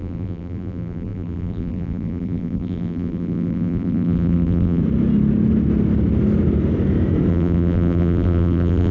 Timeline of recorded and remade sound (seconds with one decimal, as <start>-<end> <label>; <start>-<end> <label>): 0.0-4.8 remade; 4.8-7.3 recorded; 7.3-8.9 remade